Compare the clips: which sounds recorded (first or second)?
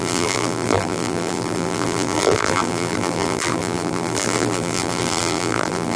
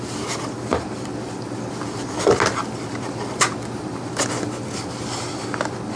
second